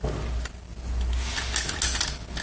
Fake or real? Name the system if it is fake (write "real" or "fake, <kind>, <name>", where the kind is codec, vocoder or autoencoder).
real